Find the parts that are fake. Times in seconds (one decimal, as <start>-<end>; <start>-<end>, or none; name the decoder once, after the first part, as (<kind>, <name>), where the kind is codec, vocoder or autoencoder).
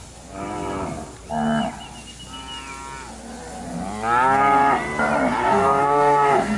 5.4-6.6 (codec, SNAC)